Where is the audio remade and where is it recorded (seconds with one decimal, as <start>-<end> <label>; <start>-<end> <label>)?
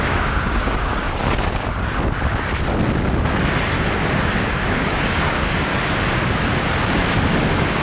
0.0-1.2 remade; 1.2-4.2 recorded; 4.2-5.7 remade; 5.7-7.8 recorded